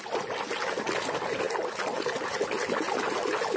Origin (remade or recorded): recorded